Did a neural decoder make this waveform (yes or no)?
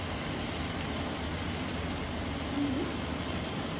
no